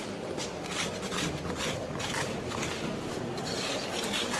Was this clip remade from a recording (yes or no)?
no